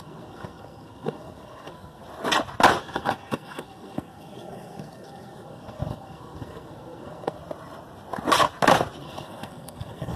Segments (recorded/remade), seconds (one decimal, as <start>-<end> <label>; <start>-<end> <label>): 0.0-2.0 remade; 2.0-2.8 recorded; 2.8-7.4 remade; 7.4-9.0 recorded; 9.0-10.2 remade